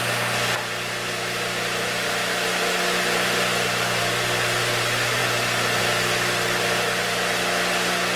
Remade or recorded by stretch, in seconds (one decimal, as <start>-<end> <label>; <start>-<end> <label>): 0.0-8.2 recorded